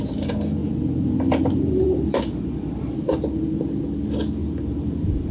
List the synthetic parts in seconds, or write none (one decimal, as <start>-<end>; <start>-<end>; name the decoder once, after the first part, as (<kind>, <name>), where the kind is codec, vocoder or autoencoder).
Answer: 0.6-3.8 (vocoder, BigVGAN v2); 4.4-5.3